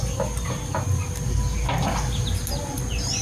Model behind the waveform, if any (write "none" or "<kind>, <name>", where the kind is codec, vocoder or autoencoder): none